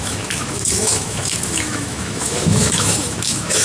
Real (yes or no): no